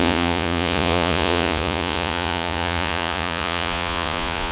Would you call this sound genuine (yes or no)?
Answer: no